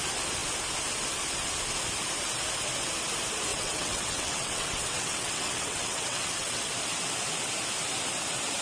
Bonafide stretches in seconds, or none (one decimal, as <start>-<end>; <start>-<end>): 0.0-3.5; 6.6-8.6